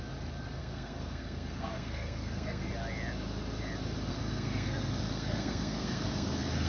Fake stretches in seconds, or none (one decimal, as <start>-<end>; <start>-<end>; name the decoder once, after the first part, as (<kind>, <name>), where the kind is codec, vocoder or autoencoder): 0.6-2.7 (codec, SNAC); 4.1-6.7